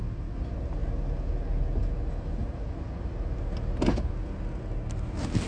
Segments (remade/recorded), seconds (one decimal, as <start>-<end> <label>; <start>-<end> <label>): 0.0-5.5 recorded